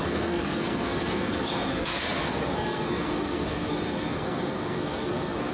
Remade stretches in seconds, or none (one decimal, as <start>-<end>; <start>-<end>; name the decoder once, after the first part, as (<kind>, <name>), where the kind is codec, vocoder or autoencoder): 0.0-5.5 (codec, SNAC)